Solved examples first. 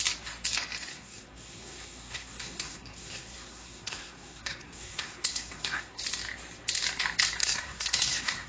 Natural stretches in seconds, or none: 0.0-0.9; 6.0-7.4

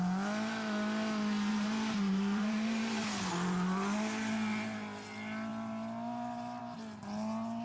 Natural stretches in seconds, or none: 0.0-1.5; 3.2-7.6

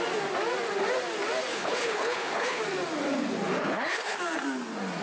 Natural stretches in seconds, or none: 0.0-1.5; 2.6-3.6; 4.2-5.0

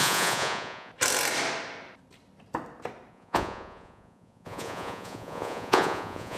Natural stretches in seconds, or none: 0.9-3.1

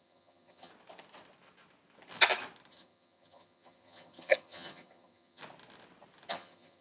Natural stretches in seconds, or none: 0.7-2.7; 5.4-6.3

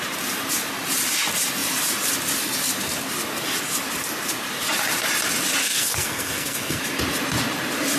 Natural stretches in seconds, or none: 0.0-5.6; 6.8-8.0

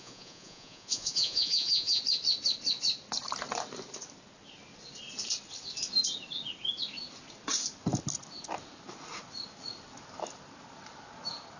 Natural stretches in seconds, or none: 2.0-11.6

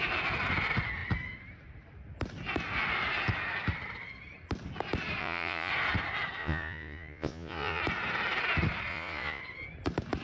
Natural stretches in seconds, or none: 0.0-5.2; 5.7-6.4; 7.8-8.9; 9.4-10.2